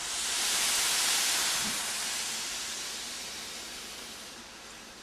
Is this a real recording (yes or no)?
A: yes